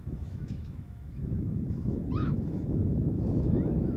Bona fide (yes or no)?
no